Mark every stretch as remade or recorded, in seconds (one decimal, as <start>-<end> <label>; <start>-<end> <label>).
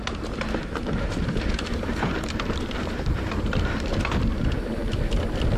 0.0-4.8 remade; 4.8-5.6 recorded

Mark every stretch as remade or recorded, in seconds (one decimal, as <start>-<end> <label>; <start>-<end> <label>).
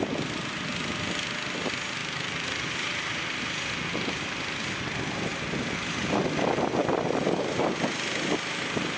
0.0-2.0 recorded; 2.0-3.5 remade; 3.5-9.0 recorded